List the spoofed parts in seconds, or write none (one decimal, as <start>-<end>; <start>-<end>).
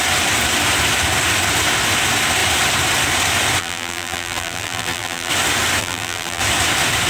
3.6-5.3; 5.8-6.4